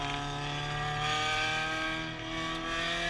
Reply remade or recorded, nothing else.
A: recorded